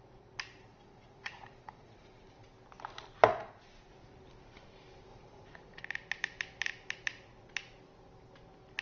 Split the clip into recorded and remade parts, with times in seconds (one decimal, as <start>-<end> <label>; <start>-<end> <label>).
0.0-0.7 recorded; 0.7-2.2 remade; 2.2-3.3 recorded; 3.3-3.9 remade; 3.9-5.1 recorded; 5.1-5.8 remade; 5.8-8.8 recorded